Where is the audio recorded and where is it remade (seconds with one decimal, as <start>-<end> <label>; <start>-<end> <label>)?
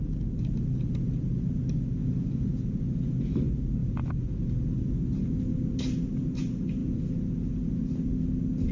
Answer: 0.0-2.0 recorded; 2.0-2.5 remade; 2.5-3.8 recorded; 3.8-4.4 remade; 4.4-8.7 recorded